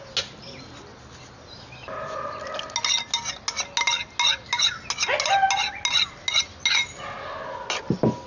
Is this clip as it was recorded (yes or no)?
yes